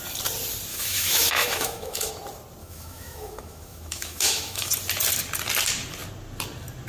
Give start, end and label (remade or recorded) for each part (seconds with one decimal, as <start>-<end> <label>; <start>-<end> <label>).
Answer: 0.0-0.7 recorded; 0.7-2.1 remade; 2.1-2.6 recorded; 2.6-4.7 remade; 4.7-6.9 recorded

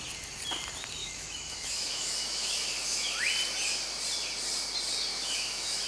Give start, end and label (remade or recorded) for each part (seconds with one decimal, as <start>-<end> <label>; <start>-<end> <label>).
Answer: 0.0-1.0 recorded; 1.0-3.2 remade; 3.2-5.1 recorded; 5.1-5.9 remade

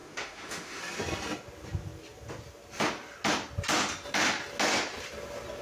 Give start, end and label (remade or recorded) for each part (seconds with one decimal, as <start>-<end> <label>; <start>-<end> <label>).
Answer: 0.0-0.8 remade; 0.8-5.6 recorded

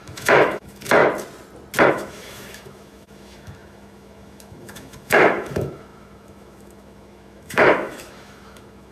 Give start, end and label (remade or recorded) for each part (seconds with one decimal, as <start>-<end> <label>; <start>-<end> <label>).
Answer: 0.0-1.0 remade; 1.0-1.9 recorded; 1.9-8.9 remade

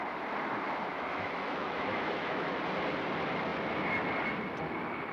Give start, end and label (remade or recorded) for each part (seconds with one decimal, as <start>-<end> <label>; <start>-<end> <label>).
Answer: 0.0-0.9 recorded; 0.9-2.6 remade; 2.6-5.1 recorded

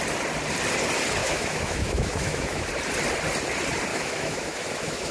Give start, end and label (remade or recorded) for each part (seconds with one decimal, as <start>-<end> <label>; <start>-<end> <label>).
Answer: 0.0-1.2 recorded; 1.2-2.7 remade; 2.7-3.9 recorded; 3.9-5.1 remade